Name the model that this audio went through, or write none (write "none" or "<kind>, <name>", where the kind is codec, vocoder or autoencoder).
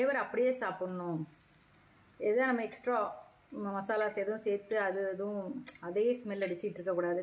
none